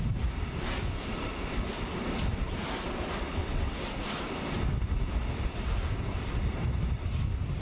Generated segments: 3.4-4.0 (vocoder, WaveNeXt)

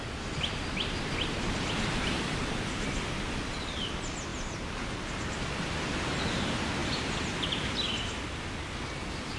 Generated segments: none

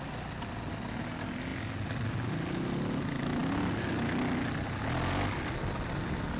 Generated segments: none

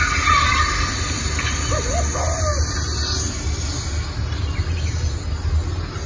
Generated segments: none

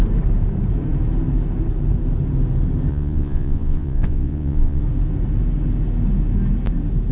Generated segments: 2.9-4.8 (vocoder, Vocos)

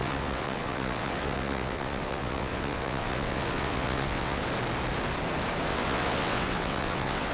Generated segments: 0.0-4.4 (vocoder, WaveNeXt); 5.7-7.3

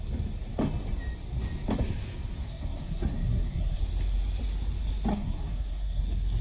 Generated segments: 2.4-3.8 (codec, SNAC); 5.1-6.0

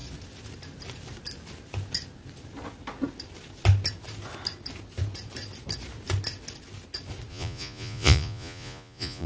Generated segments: 7.3-9.3 (vocoder, Vocos)